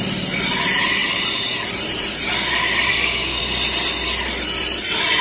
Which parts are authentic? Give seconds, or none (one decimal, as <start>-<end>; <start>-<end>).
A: 0.0-2.9; 3.4-5.2